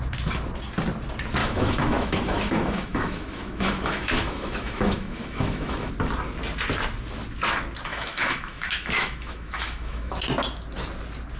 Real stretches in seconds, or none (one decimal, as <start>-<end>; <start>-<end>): 0.0-1.4; 5.9-7.9; 10.2-11.4